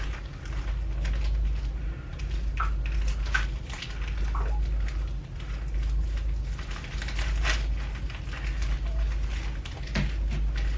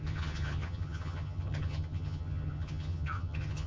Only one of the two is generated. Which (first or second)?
second